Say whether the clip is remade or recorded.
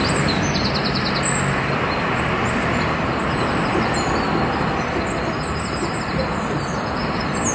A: recorded